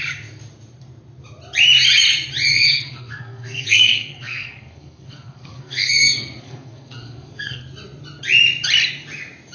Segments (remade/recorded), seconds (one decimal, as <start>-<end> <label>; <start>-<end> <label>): 0.0-2.5 recorded; 2.5-7.6 remade; 7.6-9.5 recorded